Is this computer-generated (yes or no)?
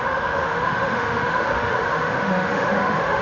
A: yes